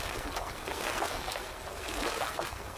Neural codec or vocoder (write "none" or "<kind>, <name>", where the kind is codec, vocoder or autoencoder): codec, SNAC